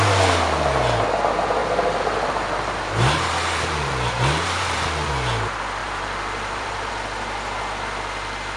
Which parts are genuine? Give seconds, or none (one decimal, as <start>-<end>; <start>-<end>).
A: 0.0-1.6; 5.1-5.8; 6.9-8.6